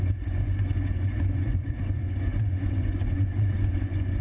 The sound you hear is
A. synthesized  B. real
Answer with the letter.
A